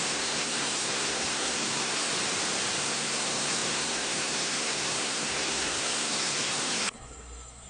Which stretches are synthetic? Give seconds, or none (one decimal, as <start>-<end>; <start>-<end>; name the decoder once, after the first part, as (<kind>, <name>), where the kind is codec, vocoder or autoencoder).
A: 0.0-2.1 (codec, SNAC); 2.8-7.7